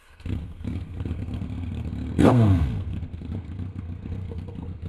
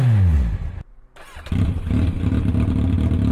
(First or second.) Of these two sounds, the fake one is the first